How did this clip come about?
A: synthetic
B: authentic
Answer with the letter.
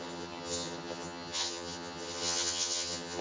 A